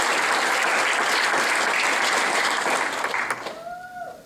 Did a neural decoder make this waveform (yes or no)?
no